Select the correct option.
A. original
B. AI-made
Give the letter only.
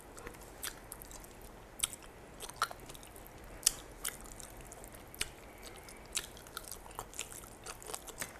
A